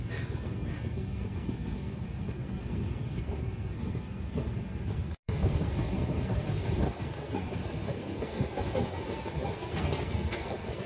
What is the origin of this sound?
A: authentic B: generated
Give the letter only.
B